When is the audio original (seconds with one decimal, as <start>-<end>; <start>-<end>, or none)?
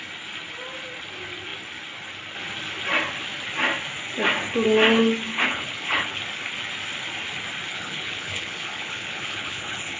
0.0-5.3; 6.2-7.7